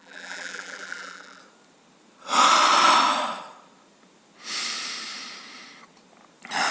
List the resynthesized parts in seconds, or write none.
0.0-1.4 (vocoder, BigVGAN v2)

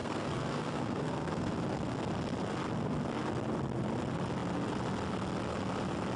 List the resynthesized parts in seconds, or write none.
0.0-1.5 (codec, SNAC)

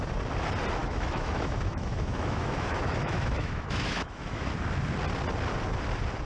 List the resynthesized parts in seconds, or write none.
0.8-4.5 (autoencoder, DAC-VAE)

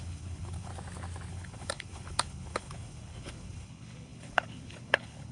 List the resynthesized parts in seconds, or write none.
0.0-0.7 (codec, HILCodec); 1.3-5.3

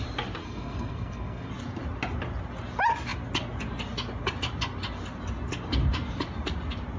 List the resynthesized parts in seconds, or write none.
0.4-1.5 (codec, SNAC)

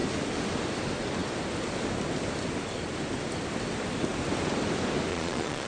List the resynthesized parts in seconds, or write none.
5.1-5.7 (vocoder, Vocos)